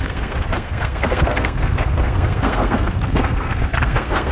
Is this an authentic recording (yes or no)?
no